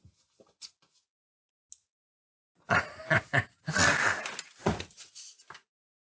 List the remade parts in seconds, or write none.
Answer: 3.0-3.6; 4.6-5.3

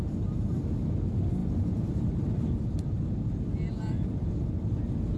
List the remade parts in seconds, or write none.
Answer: 1.4-4.5